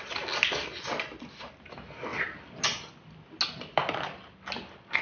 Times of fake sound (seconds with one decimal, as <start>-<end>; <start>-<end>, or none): none